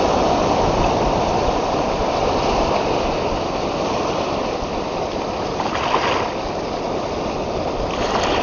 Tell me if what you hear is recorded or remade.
recorded